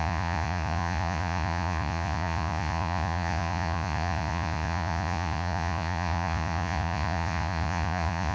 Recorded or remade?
remade